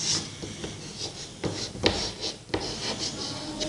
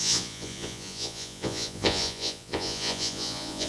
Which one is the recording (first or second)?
first